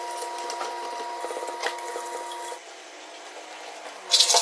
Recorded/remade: recorded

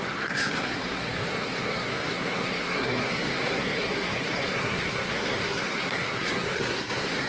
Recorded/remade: remade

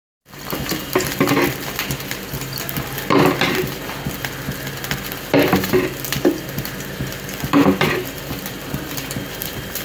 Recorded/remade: remade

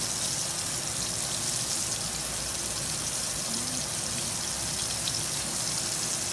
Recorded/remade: recorded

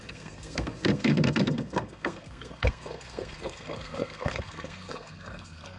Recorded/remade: remade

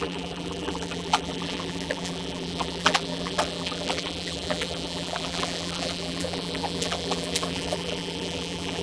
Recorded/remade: remade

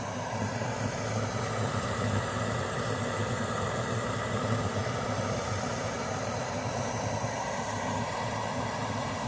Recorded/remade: remade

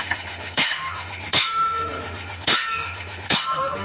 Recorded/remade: remade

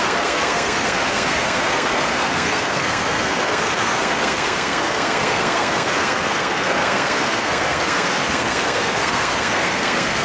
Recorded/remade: remade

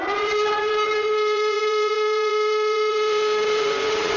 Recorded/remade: remade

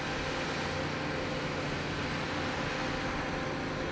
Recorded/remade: recorded